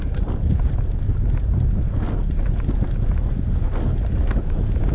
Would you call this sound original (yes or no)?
yes